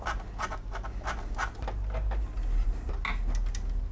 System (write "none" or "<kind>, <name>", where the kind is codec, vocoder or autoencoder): none